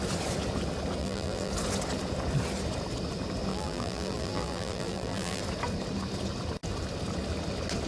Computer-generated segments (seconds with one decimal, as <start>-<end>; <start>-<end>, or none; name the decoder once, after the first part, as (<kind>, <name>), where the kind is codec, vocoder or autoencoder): 1.0-1.5 (vocoder, BigVGAN v2); 3.5-5.4